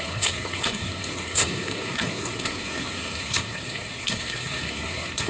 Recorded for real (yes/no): no